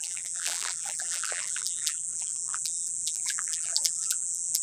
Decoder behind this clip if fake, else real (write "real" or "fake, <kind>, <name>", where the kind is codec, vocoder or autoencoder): fake, vocoder, BigVGAN v2